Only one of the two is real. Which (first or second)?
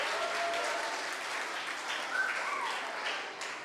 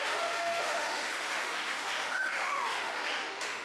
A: first